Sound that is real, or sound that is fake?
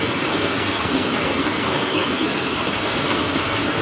fake